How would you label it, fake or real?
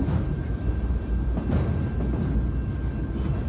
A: real